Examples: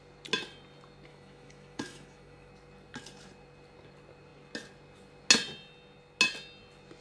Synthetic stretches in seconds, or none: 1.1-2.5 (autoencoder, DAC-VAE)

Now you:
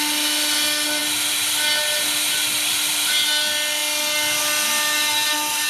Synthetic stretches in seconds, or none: none

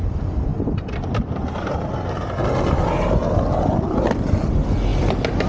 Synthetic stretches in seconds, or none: none

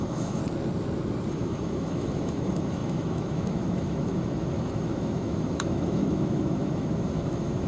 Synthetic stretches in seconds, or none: 0.0-0.4 (autoencoder, DAC-VAE); 1.3-7.7

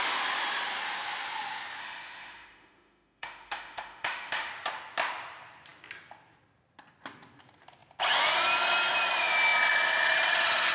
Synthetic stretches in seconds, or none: 1.8-4.5 (autoencoder, DAC-VAE)

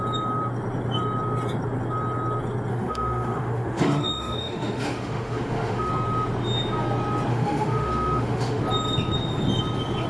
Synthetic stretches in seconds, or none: 2.7-5.9 (autoencoder, DAC-VAE); 7.3-8.6

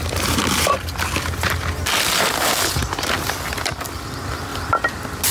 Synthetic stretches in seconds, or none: none

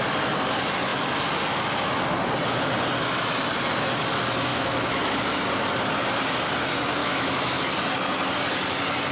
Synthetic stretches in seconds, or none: 4.5-5.1 (autoencoder, DAC-VAE); 7.0-7.6